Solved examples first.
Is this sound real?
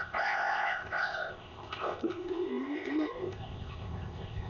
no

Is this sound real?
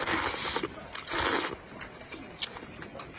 yes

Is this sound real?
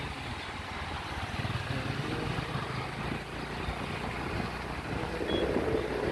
yes